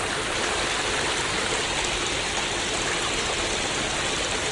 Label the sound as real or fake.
real